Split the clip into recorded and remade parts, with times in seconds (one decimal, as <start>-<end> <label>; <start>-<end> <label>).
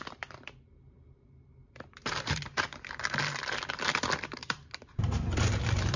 0.0-1.6 recorded; 1.6-3.2 remade; 3.2-4.4 recorded; 4.4-5.6 remade; 5.6-6.0 recorded